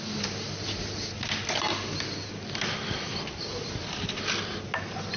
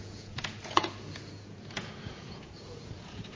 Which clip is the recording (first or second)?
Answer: first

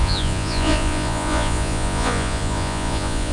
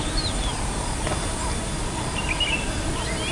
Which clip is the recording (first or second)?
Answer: second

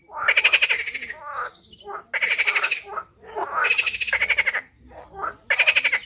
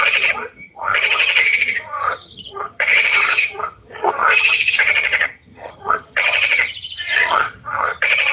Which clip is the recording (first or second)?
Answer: first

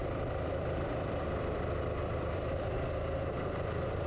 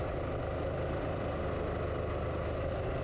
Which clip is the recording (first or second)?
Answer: second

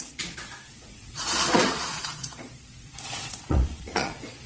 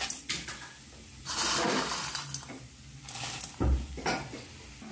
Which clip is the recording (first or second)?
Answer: second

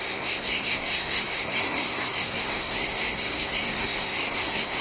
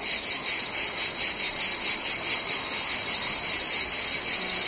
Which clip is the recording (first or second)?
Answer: second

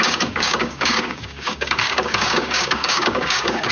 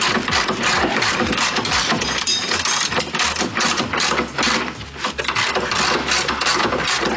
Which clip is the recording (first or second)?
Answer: second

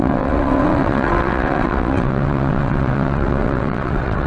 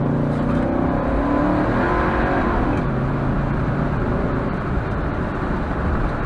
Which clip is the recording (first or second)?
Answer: second